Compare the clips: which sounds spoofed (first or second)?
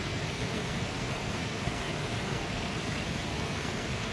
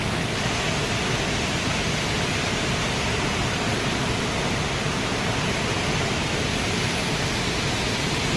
first